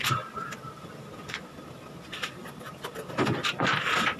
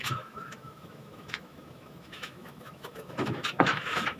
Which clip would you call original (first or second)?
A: first